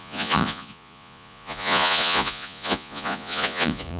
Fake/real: fake